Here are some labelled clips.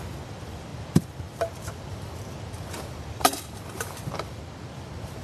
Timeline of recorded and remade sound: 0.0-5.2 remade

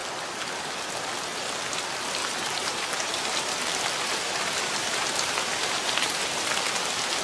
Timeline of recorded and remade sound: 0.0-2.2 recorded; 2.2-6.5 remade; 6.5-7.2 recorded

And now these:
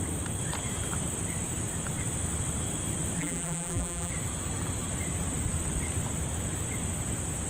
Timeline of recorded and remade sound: 0.0-3.2 recorded; 3.2-4.1 remade; 4.1-7.5 recorded

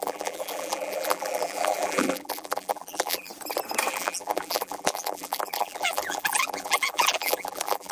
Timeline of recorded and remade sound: 0.0-3.3 remade; 3.3-3.9 recorded; 3.9-7.9 remade

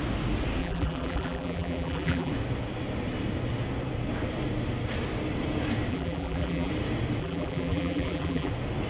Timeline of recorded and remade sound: 0.0-0.6 recorded; 0.6-2.3 remade; 2.3-5.9 recorded; 5.9-6.7 remade; 6.7-7.2 recorded; 7.2-8.5 remade; 8.5-8.9 recorded

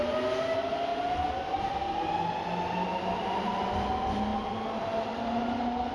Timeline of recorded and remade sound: 0.0-0.9 recorded; 0.9-1.5 remade; 1.5-4.3 recorded; 4.3-5.1 remade; 5.1-5.9 recorded

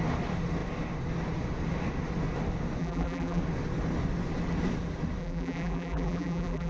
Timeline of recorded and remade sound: 0.0-2.8 recorded; 2.8-3.4 remade; 3.4-5.2 recorded; 5.2-6.7 remade

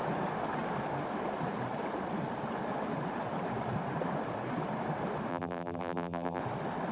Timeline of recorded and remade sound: 0.0-5.3 recorded; 5.3-6.4 remade; 6.4-6.9 recorded